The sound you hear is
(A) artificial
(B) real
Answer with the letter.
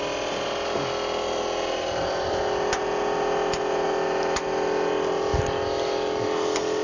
B